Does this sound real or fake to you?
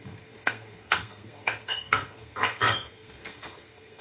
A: fake